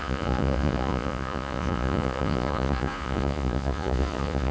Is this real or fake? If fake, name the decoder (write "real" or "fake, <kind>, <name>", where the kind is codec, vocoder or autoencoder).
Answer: fake, vocoder, Vocos